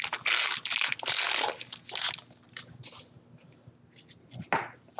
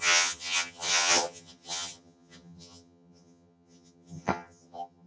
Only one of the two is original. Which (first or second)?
first